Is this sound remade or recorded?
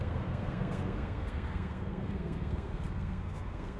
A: remade